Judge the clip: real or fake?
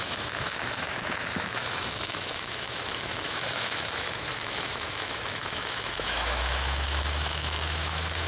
fake